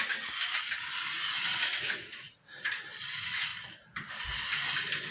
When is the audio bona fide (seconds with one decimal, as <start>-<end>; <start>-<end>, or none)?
0.0-1.5; 2.9-5.1